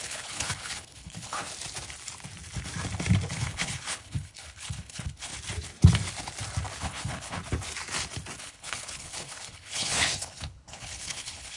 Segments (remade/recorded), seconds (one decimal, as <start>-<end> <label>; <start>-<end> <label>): 0.0-1.5 remade; 1.5-3.3 recorded; 3.3-5.3 remade; 5.3-6.8 recorded; 6.8-7.4 remade; 7.4-8.4 recorded; 8.4-11.6 remade